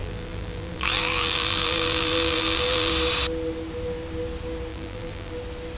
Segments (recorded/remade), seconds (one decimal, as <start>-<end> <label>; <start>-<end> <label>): 0.0-2.9 remade; 2.9-4.7 recorded; 4.7-5.3 remade; 5.3-5.8 recorded